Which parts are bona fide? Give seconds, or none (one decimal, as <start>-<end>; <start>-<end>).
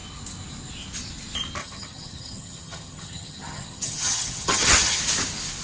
0.0-1.6; 5.0-5.6